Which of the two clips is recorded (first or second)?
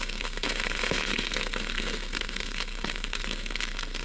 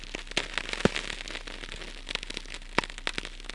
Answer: second